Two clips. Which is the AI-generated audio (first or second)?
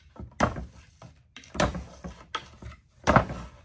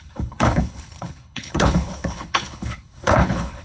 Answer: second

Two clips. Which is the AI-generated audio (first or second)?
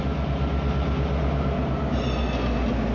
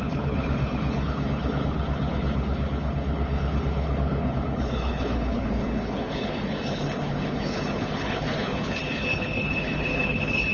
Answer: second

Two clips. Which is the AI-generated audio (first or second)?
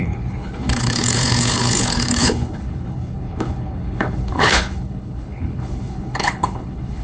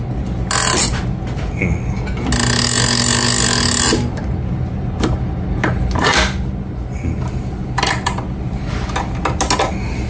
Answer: first